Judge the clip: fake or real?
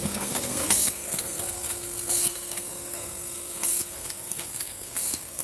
fake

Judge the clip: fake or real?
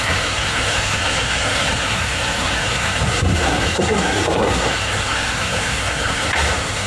fake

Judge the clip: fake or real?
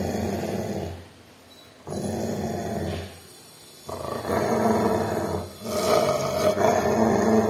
real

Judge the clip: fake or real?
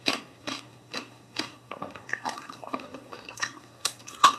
fake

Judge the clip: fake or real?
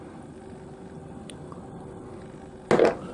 real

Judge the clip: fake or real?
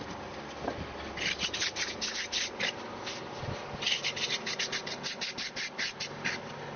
real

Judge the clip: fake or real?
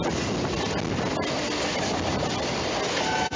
real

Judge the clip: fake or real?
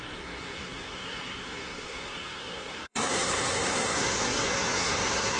fake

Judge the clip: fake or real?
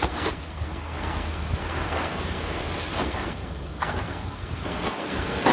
fake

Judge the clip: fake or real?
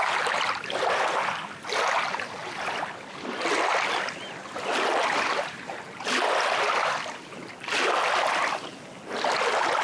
real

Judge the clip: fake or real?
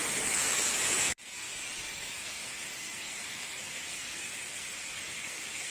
fake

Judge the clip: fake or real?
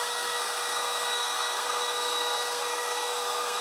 fake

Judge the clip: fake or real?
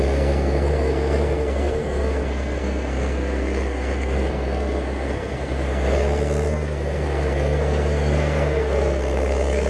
fake